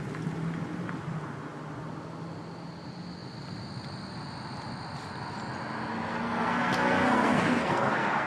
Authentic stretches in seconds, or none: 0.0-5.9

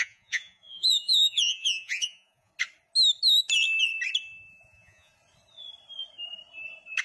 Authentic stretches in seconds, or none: 2.5-4.5; 5.1-7.0